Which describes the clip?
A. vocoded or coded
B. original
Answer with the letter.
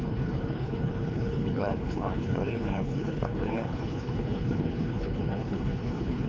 A